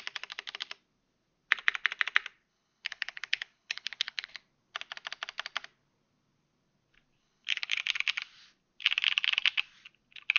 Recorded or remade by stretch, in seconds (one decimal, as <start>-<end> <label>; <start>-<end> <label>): 0.0-2.5 recorded; 2.5-4.3 remade; 4.3-7.2 recorded; 7.2-7.8 remade; 7.8-10.4 recorded